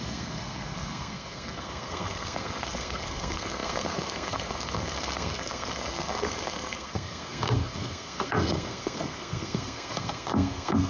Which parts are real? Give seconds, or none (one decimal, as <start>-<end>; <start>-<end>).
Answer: none